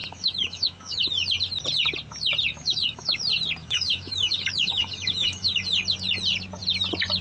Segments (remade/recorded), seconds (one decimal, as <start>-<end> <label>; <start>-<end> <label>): 0.0-1.1 remade; 1.1-2.5 recorded; 2.5-3.2 remade; 3.2-3.6 recorded; 3.6-5.6 remade; 5.6-7.2 recorded